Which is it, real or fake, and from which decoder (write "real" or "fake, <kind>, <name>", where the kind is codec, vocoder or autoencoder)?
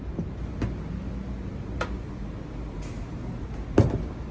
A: real